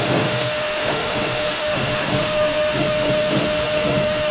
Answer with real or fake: fake